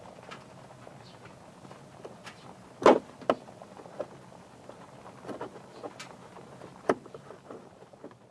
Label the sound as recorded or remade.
recorded